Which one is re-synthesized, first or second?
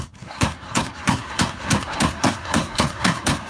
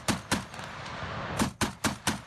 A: first